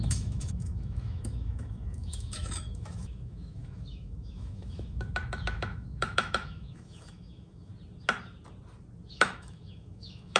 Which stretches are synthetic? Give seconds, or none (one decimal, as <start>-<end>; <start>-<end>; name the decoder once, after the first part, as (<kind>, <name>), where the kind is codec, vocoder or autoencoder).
0.0-7.7 (autoencoder, DAC-VAE); 9.1-10.4